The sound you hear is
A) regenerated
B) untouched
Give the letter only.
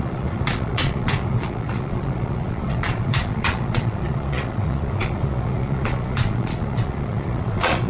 A